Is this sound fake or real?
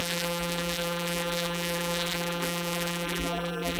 fake